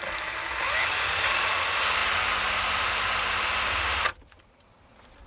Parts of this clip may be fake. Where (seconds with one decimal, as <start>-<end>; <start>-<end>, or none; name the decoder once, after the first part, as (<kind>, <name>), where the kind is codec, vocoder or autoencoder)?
none